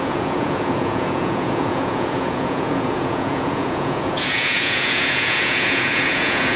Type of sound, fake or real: fake